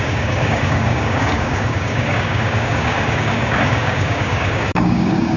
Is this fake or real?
fake